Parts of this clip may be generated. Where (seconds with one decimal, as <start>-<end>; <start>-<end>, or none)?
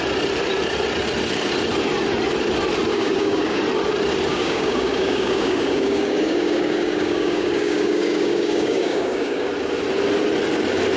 2.9-3.6; 4.3-9.5